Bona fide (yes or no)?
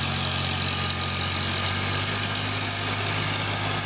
yes